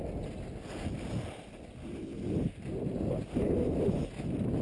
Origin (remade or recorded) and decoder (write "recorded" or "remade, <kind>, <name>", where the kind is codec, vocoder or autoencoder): recorded